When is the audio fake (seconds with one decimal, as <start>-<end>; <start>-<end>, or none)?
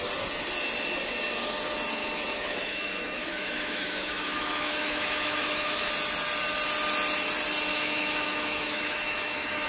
2.0-5.9; 7.7-9.7